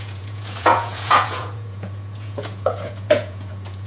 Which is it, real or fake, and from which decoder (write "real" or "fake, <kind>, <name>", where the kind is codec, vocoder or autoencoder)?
fake, vocoder, Vocos